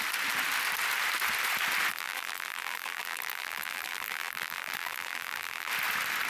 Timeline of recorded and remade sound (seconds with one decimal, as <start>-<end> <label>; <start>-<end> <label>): 0.0-1.9 recorded; 1.9-5.7 remade; 5.7-6.3 recorded